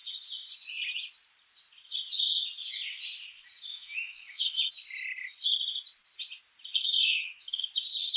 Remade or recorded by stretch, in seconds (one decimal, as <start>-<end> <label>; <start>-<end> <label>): 0.0-3.7 recorded; 3.7-4.7 remade; 4.7-6.7 recorded; 6.7-7.6 remade; 7.6-8.2 recorded